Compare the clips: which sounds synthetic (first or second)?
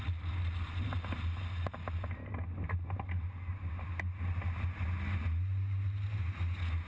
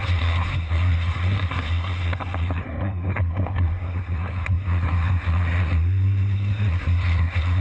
second